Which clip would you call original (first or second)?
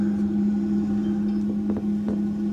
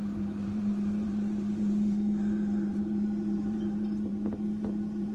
first